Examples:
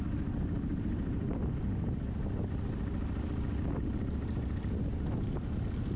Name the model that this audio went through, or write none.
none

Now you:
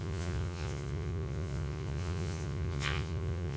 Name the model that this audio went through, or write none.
vocoder, Vocos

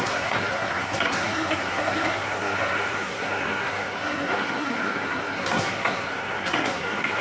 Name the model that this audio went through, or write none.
codec, SNAC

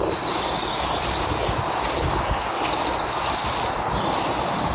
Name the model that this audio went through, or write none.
none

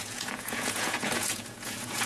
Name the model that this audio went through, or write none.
vocoder, Vocos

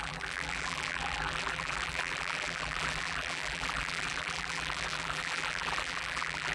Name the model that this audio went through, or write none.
vocoder, BigVGAN v2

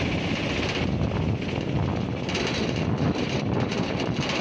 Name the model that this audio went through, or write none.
none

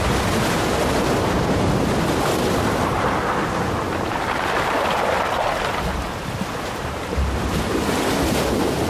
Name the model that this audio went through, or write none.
none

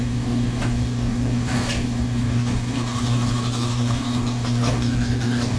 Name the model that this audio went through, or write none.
codec, DAC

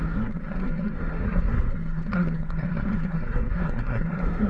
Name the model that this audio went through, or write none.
codec, SNAC